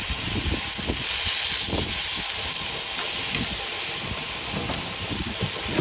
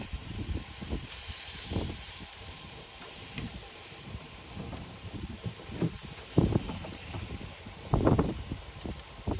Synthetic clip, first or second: second